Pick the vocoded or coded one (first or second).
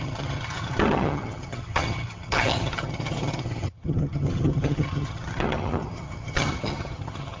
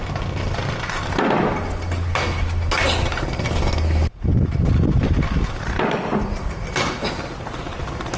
first